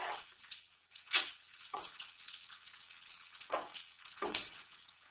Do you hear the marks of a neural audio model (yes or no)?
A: yes